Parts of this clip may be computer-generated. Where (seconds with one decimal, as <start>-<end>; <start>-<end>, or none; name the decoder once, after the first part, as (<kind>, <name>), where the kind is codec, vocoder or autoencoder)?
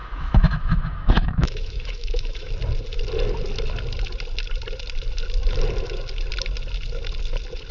0.0-2.5 (autoencoder, DAC-VAE)